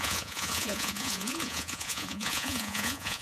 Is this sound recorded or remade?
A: remade